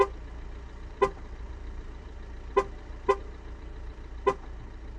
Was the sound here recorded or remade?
recorded